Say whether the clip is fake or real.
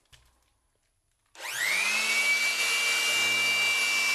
real